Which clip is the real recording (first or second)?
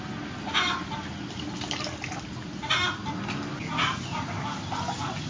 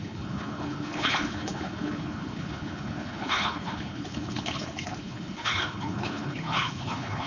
first